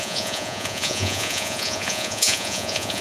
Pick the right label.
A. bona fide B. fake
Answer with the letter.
B